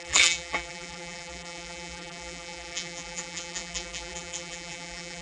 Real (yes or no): no